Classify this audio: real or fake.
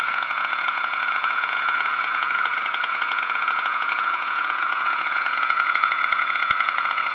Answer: fake